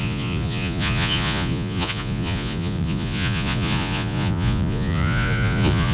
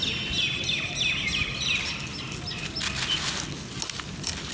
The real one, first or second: second